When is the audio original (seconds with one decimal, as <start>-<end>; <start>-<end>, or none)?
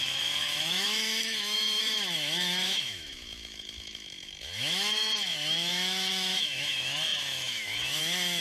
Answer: none